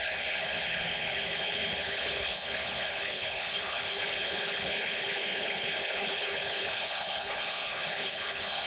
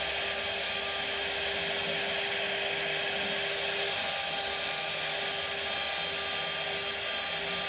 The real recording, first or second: second